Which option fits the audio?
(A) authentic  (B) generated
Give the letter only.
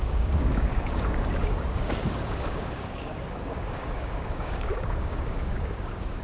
B